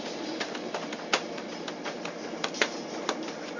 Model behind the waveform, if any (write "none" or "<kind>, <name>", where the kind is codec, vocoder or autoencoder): none